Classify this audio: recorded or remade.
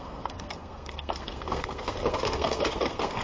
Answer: remade